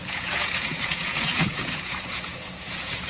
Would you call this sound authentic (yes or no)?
no